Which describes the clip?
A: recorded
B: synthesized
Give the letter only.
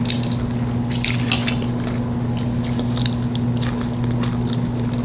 A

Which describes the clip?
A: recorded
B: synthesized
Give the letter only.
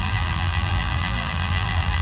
B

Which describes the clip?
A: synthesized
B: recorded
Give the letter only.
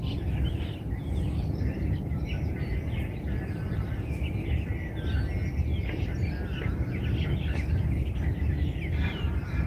B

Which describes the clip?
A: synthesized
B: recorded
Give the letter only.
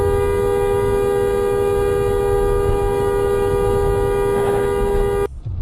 B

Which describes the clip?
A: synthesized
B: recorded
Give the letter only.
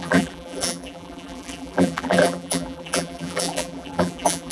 A